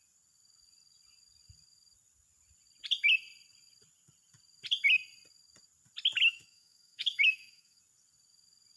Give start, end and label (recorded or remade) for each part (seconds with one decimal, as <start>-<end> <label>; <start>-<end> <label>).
0.0-6.3 recorded; 6.3-7.8 remade; 7.8-8.8 recorded